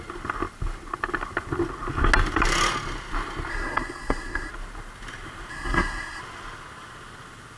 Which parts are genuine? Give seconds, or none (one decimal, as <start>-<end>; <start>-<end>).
0.0-3.5; 4.5-5.5; 6.2-7.6